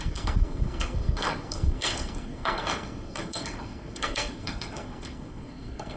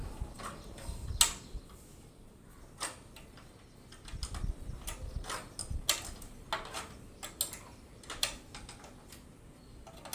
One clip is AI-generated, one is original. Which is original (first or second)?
second